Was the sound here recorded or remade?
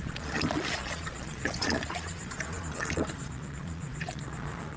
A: remade